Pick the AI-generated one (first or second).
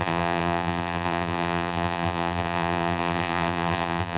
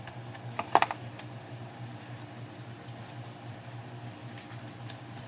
first